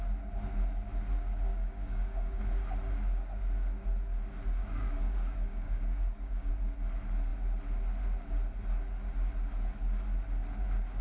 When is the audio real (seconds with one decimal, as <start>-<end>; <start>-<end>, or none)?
0.0-1.5; 2.4-4.6; 6.5-11.0